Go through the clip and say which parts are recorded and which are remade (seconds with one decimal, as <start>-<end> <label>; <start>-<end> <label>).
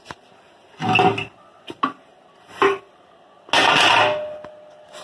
0.0-5.0 recorded